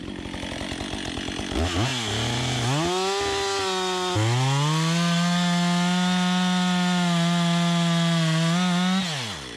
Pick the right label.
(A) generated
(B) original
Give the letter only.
B